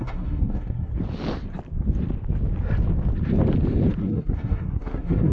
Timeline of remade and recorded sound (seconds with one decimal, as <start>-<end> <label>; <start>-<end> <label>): 0.0-0.9 remade; 0.9-4.0 recorded; 4.0-5.3 remade